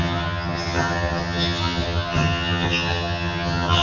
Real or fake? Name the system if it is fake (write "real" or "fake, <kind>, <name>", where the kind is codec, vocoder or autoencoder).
fake, vocoder, HiFi-GAN